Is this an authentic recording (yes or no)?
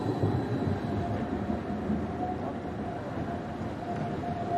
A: yes